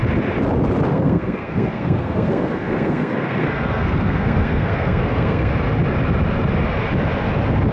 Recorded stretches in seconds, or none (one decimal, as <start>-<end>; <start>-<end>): 0.0-0.9; 5.5-7.7